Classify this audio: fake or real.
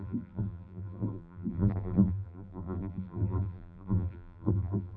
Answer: fake